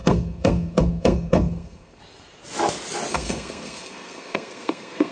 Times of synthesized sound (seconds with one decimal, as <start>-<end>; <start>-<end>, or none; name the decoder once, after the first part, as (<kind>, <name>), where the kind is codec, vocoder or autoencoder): 0.0-2.0 (codec, SNAC); 3.1-5.1